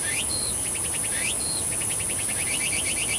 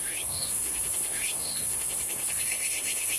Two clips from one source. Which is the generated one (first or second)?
second